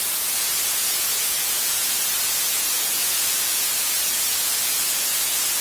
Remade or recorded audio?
remade